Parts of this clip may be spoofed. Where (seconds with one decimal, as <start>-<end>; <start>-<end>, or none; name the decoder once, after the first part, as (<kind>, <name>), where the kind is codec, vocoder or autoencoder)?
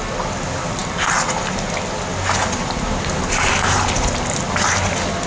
none